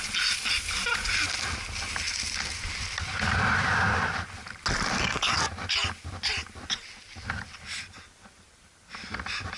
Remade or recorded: recorded